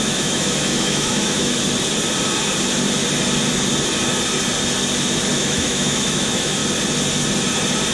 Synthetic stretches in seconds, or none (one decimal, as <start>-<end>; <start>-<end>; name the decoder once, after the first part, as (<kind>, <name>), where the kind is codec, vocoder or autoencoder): 0.0-1.6 (autoencoder, DAC-VAE); 5.3-6.6